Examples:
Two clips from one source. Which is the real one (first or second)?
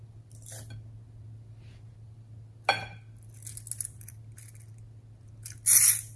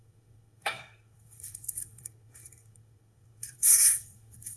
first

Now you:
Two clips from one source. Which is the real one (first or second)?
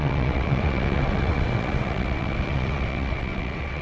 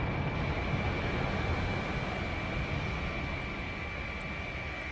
second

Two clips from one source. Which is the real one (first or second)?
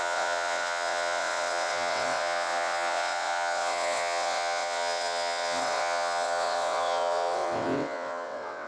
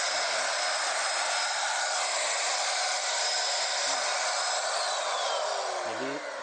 second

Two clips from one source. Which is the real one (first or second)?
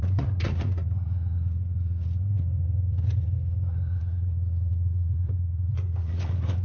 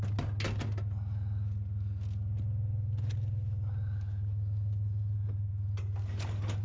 second